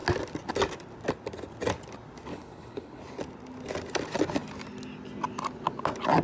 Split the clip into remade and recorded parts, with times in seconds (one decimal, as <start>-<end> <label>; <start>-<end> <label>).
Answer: 0.0-2.3 recorded; 2.3-3.0 remade; 3.0-6.2 recorded